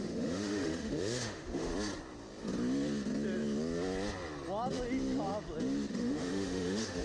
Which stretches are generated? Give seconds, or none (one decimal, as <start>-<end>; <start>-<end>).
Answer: 0.0-1.7; 5.9-7.0